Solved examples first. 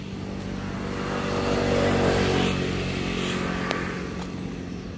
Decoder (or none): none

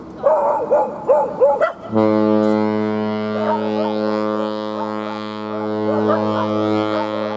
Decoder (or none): none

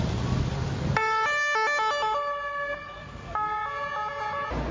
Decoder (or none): none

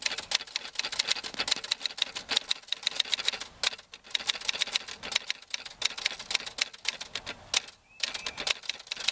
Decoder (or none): none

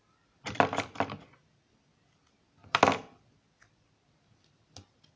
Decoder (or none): none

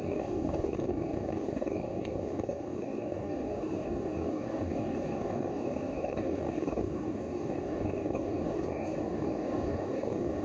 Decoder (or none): codec, DAC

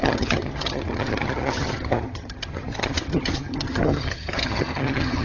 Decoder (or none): vocoder, HiFi-GAN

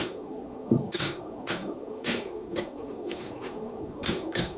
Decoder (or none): codec, SNAC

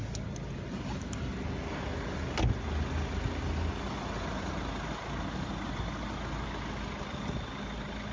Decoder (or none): none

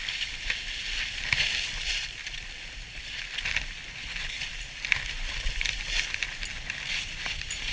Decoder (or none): none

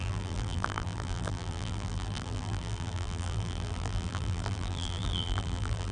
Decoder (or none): vocoder, BigVGAN v2